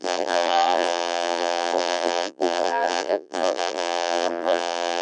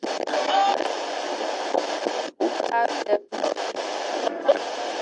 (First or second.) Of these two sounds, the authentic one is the second